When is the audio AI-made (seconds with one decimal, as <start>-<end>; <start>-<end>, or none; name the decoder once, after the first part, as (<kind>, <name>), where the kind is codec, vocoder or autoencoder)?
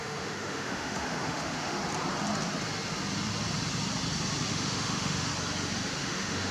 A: 0.0-1.8 (autoencoder, DAC-VAE); 4.5-5.3; 6.0-6.5